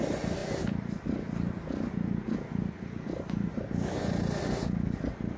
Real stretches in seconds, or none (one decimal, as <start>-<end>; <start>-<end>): 0.0-5.4